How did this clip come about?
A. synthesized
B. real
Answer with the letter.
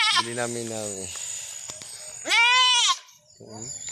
B